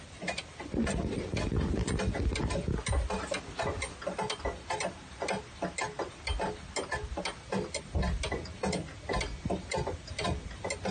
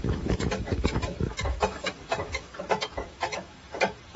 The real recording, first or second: first